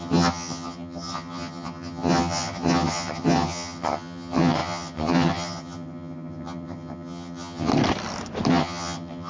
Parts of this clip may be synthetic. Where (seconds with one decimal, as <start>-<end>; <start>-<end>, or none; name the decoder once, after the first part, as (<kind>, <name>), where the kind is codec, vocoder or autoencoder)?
0.0-7.7 (vocoder, HiFi-GAN); 8.5-9.3